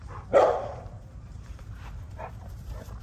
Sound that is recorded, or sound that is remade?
remade